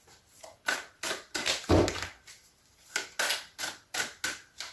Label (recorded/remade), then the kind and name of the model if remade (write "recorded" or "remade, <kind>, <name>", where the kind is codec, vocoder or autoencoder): recorded